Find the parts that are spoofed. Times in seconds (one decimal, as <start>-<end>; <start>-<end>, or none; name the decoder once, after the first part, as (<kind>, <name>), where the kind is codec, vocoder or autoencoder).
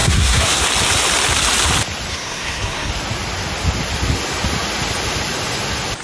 0.0-0.6 (codec, SNAC); 2.1-2.9